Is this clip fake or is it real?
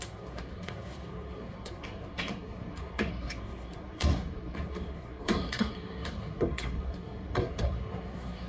fake